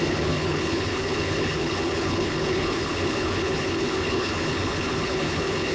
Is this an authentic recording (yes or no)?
no